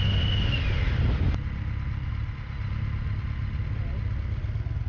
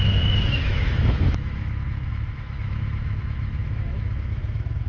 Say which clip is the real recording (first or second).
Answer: first